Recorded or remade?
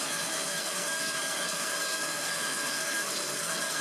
remade